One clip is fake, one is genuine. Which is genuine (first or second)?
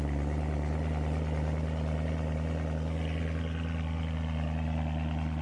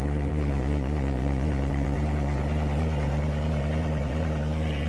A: first